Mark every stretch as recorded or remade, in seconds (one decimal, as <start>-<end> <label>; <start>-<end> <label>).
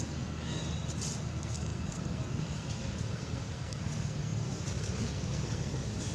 0.0-0.6 remade; 0.6-1.2 recorded; 1.2-6.1 remade